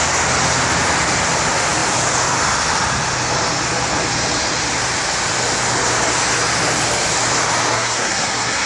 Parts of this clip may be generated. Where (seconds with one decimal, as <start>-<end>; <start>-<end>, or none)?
7.7-8.7